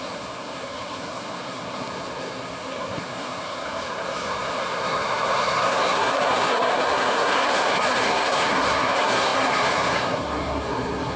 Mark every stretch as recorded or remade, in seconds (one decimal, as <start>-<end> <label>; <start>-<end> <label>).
0.0-11.2 remade